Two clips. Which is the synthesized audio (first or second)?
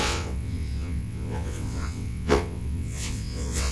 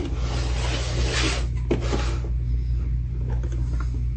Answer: first